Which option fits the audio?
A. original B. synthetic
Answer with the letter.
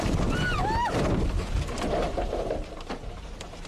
A